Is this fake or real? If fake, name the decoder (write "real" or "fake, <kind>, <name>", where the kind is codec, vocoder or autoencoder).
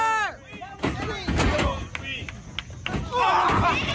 real